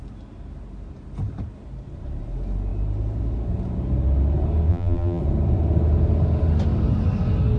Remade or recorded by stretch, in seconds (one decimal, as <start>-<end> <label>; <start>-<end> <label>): 0.0-4.7 recorded; 4.7-5.2 remade; 5.2-7.6 recorded